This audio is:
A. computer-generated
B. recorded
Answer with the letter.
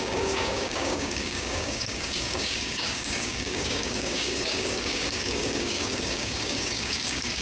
A